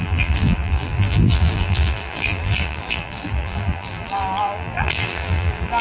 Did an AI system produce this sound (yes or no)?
yes